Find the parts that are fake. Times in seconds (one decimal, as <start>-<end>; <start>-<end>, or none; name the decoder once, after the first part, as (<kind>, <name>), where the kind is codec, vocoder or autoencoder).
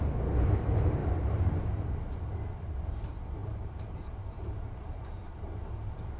1.0-1.6 (vocoder, BigVGAN v2); 3.4-5.6